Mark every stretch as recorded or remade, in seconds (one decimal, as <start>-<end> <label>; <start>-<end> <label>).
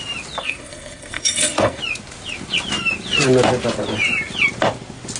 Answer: 0.0-0.4 recorded; 0.4-1.8 remade; 1.8-5.2 recorded